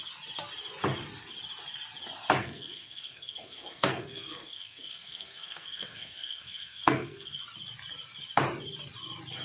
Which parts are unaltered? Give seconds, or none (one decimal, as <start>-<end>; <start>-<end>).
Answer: 0.0-2.4; 7.4-9.4